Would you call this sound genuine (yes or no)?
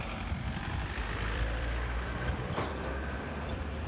no